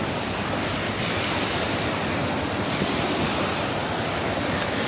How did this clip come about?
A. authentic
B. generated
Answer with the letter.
A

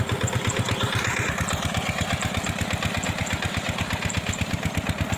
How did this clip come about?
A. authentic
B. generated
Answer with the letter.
A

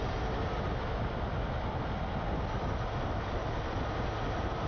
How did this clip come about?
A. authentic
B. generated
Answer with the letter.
A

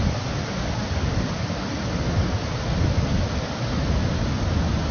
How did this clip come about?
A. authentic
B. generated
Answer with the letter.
A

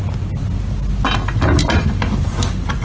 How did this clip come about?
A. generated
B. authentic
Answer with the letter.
B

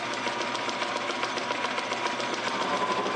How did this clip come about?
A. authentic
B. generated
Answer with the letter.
A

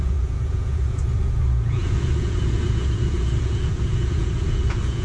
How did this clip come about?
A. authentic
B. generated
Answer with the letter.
B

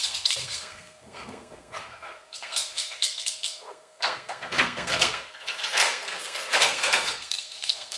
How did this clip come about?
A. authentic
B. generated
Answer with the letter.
B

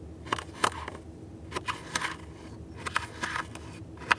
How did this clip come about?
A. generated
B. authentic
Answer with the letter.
B